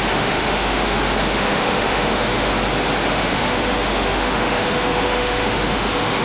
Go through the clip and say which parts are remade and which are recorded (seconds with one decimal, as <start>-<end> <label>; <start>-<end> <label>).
0.0-2.5 remade; 2.5-3.1 recorded; 3.1-6.2 remade